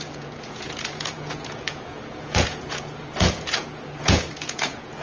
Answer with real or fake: fake